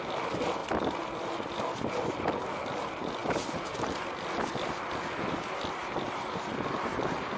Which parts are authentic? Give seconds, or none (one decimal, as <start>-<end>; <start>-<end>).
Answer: 0.0-7.4